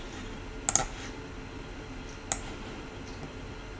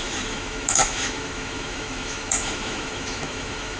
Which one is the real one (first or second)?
first